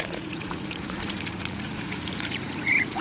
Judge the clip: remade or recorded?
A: remade